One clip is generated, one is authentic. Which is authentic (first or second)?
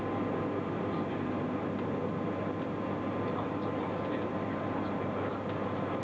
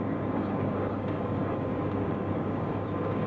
first